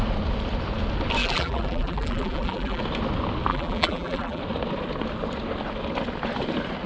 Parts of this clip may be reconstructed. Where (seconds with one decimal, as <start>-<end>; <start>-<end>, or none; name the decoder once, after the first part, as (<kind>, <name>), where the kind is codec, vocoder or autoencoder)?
1.2-2.8 (vocoder, BigVGAN v2); 3.5-4.4